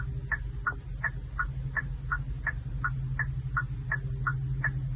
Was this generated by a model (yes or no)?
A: no